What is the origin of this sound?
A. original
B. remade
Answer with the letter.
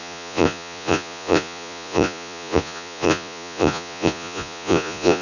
B